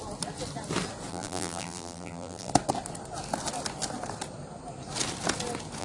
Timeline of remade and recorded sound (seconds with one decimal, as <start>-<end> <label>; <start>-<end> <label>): 0.0-1.1 recorded; 1.1-2.5 remade; 2.5-5.8 recorded